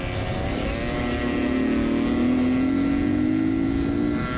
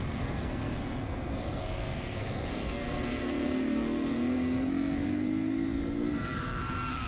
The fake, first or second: second